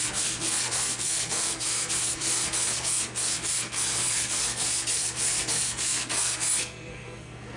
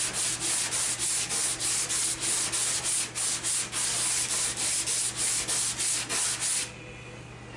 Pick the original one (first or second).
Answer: second